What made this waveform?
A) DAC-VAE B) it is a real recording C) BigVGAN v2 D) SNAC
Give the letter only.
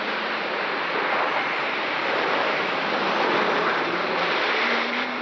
C